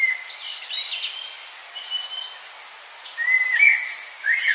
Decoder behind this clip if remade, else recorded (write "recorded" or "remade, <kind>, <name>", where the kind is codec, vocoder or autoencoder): recorded